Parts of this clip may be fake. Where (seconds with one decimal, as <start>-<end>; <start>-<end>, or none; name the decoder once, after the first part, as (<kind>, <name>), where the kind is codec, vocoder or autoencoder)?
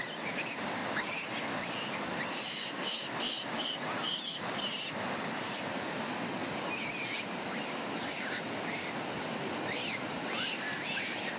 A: none